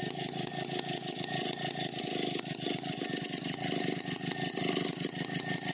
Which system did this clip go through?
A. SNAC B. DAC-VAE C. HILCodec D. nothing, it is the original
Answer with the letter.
D